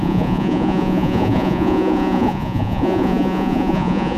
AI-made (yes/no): yes